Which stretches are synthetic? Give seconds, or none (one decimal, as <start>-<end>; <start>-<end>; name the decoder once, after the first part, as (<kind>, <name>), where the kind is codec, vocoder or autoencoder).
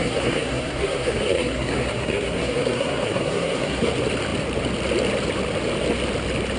0.0-3.9 (codec, SNAC)